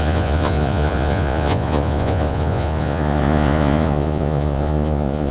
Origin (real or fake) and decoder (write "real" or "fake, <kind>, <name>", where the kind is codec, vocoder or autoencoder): fake, vocoder, Vocos